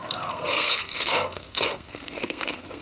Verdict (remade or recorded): remade